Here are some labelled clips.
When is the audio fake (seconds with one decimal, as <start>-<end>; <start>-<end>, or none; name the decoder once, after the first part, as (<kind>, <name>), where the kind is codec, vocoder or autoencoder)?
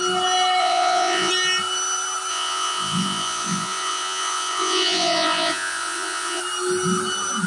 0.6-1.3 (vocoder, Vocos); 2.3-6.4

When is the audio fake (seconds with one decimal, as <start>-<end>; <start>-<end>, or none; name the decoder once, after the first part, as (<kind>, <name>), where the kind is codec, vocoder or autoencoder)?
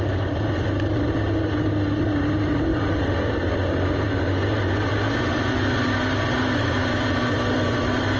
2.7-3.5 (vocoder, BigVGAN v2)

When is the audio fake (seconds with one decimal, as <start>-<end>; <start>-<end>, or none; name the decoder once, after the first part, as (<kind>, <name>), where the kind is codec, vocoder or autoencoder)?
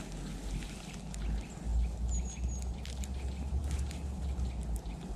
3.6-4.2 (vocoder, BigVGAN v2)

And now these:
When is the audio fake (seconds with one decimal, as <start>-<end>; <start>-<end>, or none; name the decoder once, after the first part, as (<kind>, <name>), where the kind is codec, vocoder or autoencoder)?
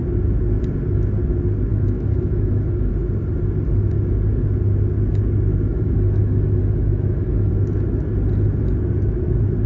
1.7-2.9 (autoencoder, DAC-VAE); 5.7-7.5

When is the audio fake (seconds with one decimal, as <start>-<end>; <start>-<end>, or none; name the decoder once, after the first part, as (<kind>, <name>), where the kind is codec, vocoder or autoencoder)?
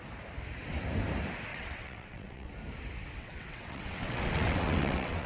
1.5-2.5 (vocoder, WaveNeXt); 3.2-5.3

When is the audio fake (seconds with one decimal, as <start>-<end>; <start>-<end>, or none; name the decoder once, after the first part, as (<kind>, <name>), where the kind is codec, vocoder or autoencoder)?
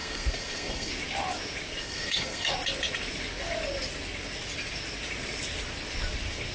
0.0-0.9 (codec, SNAC); 1.8-2.5